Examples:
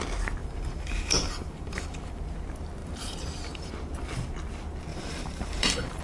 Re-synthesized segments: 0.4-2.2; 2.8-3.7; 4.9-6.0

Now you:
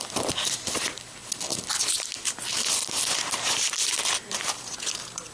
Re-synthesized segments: 0.0-1.2; 1.7-5.3

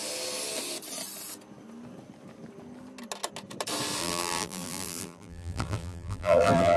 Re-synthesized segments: 4.0-6.8

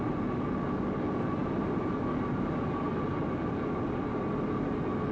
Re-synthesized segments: none

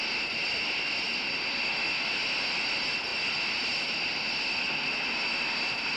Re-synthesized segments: none